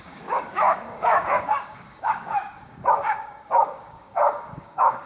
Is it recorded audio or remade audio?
remade